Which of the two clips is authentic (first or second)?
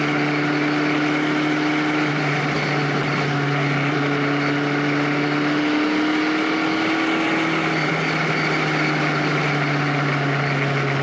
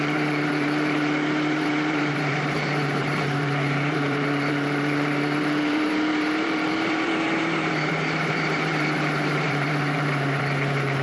first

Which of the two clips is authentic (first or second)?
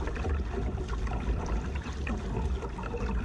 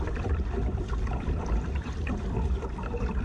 first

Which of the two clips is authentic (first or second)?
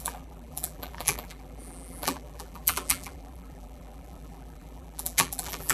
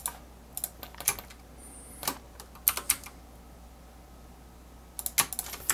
second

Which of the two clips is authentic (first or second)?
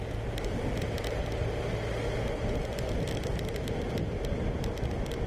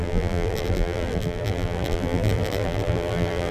first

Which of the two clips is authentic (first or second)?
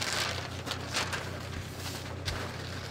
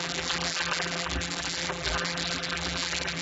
first